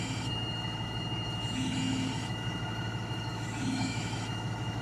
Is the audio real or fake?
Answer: fake